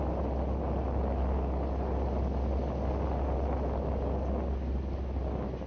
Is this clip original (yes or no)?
yes